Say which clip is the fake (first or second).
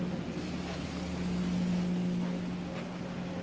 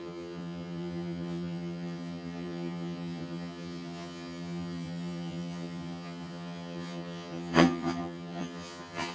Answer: second